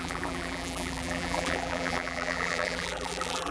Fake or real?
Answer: fake